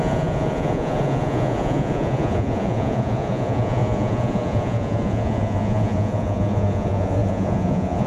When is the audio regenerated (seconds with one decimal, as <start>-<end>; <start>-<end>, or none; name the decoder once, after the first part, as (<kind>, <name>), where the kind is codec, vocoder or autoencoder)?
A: 0.0-8.1 (vocoder, Vocos)